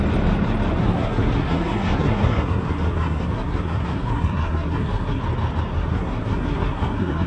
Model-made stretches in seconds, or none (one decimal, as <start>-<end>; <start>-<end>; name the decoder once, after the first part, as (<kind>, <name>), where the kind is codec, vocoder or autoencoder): 0.8-5.2 (codec, SNAC); 5.7-7.3